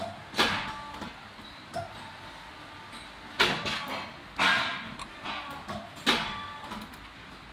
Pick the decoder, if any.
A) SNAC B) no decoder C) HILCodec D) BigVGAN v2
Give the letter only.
B